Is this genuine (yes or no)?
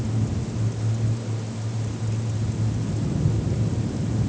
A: yes